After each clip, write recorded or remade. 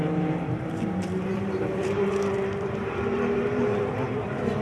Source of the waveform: remade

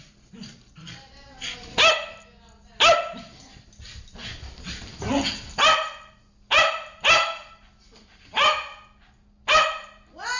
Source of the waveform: recorded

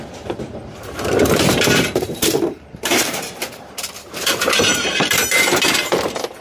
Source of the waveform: remade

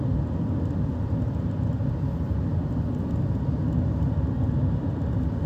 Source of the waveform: recorded